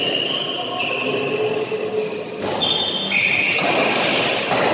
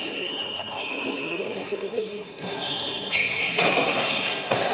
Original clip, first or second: first